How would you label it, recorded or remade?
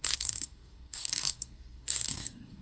remade